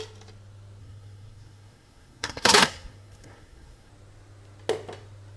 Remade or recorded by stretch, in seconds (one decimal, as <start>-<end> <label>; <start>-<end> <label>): 0.0-0.8 recorded; 0.8-3.9 remade; 3.9-5.4 recorded